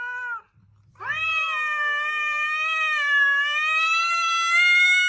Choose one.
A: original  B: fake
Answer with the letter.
A